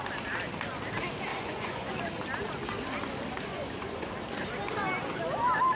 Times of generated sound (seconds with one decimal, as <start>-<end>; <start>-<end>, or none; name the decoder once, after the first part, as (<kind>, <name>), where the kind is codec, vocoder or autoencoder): 1.3-2.0 (vocoder, Vocos); 3.5-4.1